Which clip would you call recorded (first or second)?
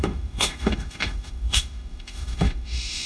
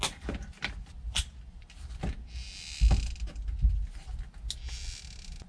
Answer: second